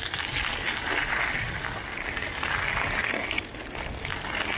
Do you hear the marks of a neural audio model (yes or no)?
no